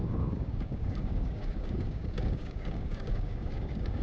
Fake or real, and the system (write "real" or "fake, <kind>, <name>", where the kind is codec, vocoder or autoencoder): fake, codec, DAC